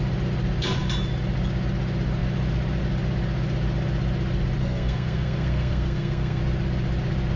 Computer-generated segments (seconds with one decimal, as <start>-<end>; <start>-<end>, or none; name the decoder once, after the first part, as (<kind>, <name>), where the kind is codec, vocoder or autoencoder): 4.6-6.4 (codec, SNAC)